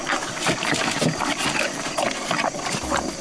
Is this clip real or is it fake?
real